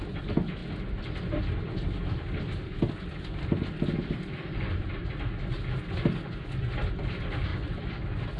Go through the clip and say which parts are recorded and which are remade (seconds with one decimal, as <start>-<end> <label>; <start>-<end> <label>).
0.0-8.4 recorded